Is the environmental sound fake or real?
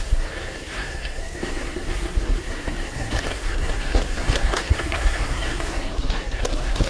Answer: fake